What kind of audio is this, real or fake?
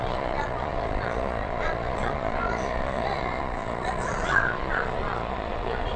fake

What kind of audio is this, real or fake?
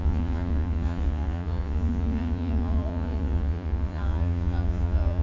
fake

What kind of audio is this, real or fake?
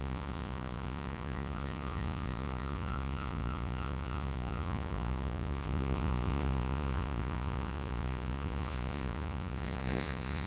fake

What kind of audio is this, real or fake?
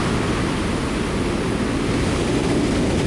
real